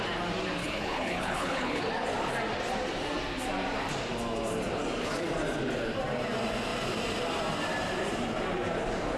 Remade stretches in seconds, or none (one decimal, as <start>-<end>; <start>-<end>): 0.6-1.8